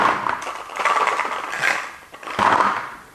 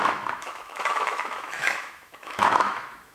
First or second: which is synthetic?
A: second